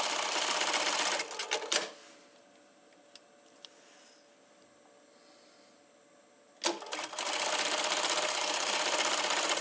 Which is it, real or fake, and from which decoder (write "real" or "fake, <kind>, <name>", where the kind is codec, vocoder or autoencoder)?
real